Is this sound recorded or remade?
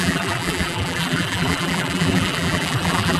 remade